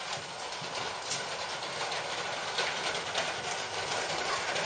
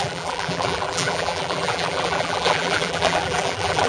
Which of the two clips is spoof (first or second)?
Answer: second